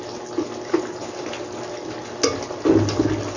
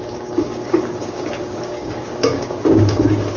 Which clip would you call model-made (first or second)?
second